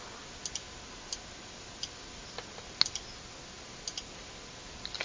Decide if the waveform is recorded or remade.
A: recorded